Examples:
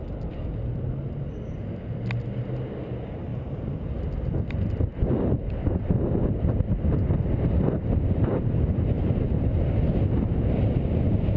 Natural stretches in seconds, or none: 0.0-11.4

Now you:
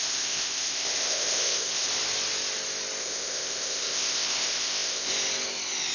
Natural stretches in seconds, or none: 1.9-3.0; 5.1-5.9

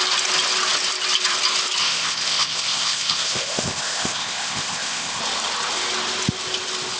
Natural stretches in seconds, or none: 0.0-1.8; 5.2-7.0

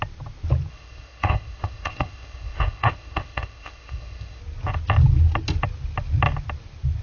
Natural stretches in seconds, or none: 0.0-0.7; 4.4-7.0

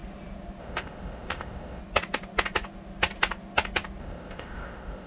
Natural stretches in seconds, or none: 0.0-0.6; 1.8-4.0

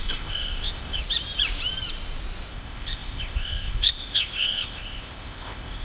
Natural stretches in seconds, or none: 1.0-2.5

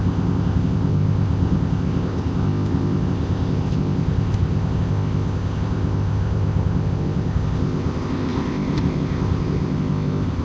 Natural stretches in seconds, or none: none

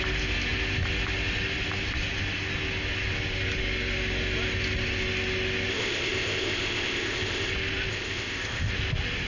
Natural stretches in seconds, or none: 0.0-5.7; 7.5-7.9; 8.7-9.3